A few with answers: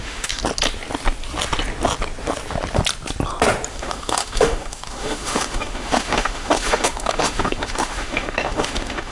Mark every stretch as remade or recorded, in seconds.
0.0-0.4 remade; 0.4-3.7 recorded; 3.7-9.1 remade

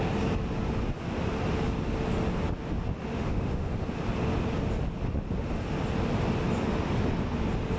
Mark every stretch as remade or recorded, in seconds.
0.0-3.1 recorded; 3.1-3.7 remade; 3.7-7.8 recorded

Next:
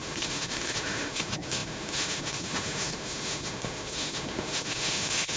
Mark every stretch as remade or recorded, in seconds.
0.0-5.4 remade

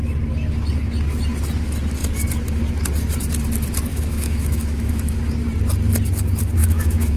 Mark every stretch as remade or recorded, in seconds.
0.0-3.9 recorded; 3.9-5.2 remade; 5.2-6.6 recorded; 6.6-7.2 remade

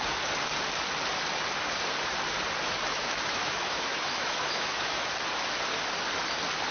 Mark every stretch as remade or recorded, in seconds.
0.0-2.9 recorded; 2.9-5.1 remade; 5.1-6.7 recorded